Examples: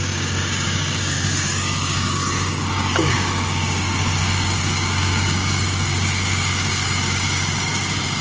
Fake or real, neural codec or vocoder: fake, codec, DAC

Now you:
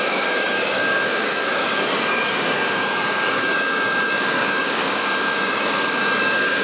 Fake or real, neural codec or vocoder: fake, codec, DAC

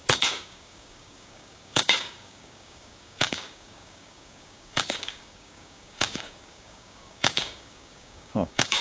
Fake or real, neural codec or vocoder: fake, codec, DAC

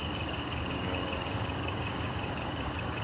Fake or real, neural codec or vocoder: fake, codec, DAC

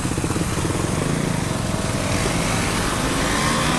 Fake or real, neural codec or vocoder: real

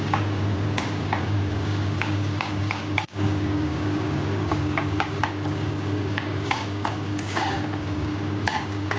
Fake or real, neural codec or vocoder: fake, codec, DAC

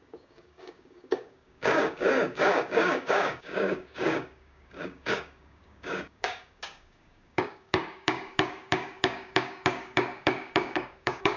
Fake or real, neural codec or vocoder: fake, codec, DAC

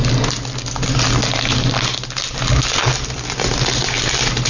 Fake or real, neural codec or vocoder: real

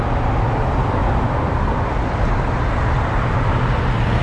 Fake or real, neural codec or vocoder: real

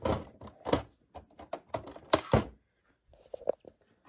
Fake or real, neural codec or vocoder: real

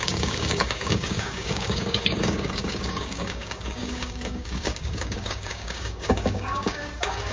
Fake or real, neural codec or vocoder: fake, codec, DAC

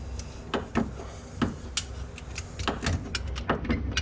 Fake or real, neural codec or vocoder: real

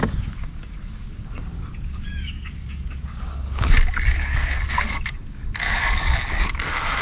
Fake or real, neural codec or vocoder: fake, codec, DAC